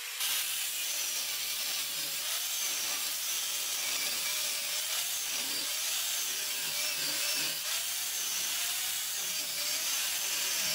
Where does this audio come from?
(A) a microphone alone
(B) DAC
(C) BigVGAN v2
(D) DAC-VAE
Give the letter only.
C